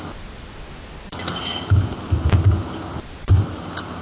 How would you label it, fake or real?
real